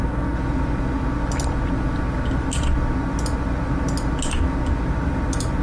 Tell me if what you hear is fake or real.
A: real